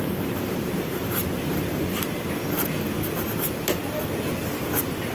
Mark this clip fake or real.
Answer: real